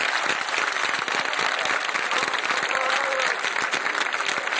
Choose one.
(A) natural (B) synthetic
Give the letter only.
A